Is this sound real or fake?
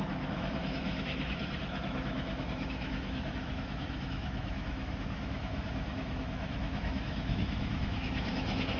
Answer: fake